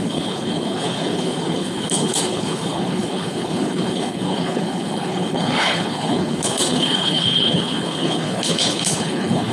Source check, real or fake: fake